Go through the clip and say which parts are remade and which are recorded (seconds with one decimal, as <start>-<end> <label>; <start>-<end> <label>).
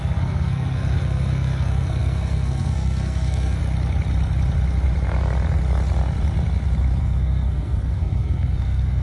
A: 0.0-3.6 remade; 3.6-7.0 recorded; 7.0-9.0 remade